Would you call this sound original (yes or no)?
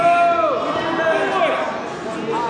yes